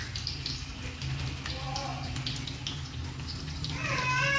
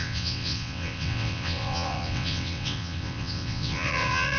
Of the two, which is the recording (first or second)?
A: first